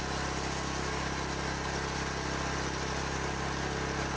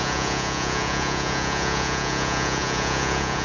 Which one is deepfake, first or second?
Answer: second